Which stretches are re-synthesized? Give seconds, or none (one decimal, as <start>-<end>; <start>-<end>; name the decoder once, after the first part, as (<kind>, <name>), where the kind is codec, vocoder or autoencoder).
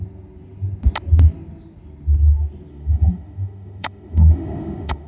2.7-5.1 (autoencoder, DAC-VAE)